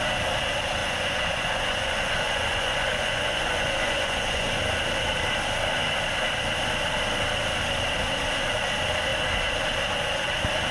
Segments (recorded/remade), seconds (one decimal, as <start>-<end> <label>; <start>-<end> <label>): 0.0-0.8 recorded; 0.8-4.6 remade; 4.6-10.7 recorded